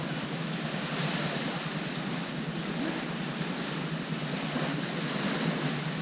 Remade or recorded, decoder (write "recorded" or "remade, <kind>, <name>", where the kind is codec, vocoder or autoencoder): recorded